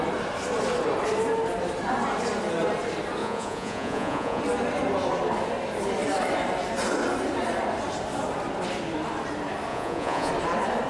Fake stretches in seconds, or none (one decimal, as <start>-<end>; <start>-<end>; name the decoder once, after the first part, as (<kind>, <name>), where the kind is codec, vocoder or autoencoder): 3.2-4.4 (vocoder, Vocos); 9.7-10.3

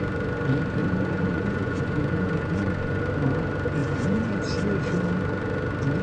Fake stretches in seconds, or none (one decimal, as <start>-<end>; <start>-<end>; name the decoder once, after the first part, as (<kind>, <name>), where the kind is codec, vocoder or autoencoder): 0.8-3.0 (vocoder, Vocos); 3.8-4.4

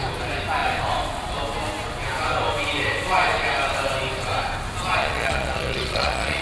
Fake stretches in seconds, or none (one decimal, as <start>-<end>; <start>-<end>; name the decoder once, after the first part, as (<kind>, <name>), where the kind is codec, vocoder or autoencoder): 5.0-6.4 (vocoder, Vocos)

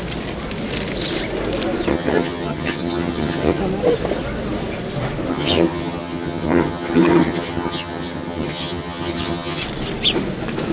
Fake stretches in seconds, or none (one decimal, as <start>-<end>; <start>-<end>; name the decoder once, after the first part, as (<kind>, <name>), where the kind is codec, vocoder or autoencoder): 1.9-3.6 (vocoder, HiFi-GAN); 5.3-9.6

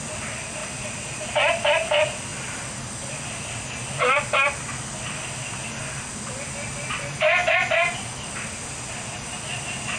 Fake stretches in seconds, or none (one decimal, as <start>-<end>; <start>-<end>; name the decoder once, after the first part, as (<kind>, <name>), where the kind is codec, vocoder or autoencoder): none

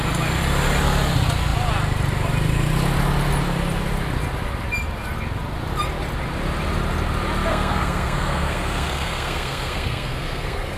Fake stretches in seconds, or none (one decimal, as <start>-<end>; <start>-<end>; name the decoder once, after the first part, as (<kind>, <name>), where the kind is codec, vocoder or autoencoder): 7.5-10.8 (codec, SNAC)

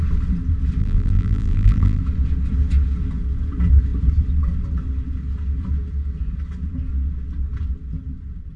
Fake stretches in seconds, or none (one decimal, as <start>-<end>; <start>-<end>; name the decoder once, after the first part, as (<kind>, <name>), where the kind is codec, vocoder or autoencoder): 0.8-2.0 (vocoder, BigVGAN v2)

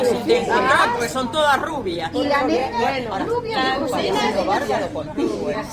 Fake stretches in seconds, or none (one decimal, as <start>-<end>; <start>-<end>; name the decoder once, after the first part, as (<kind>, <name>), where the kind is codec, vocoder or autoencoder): 0.0-0.4 (vocoder, BigVGAN v2); 1.7-2.6; 3.2-5.7